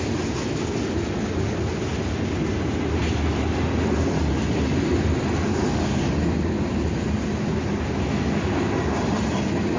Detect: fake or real real